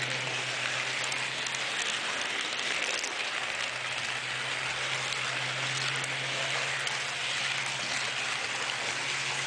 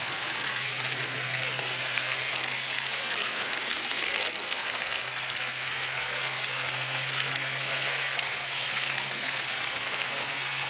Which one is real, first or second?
first